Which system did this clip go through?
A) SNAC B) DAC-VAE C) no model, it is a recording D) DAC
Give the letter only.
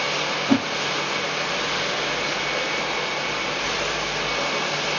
C